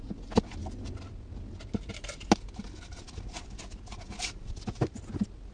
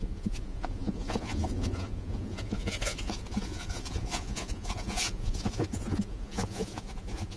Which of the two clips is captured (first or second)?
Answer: first